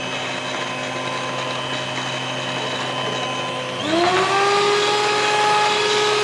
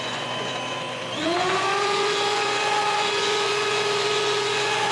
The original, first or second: first